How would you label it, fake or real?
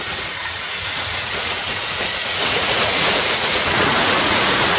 fake